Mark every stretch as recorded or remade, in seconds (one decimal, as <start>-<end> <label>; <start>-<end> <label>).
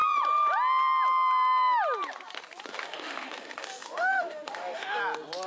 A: 0.0-2.7 recorded; 2.7-5.0 remade; 5.0-5.5 recorded